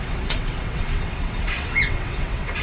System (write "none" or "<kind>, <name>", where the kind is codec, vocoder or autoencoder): vocoder, WaveNeXt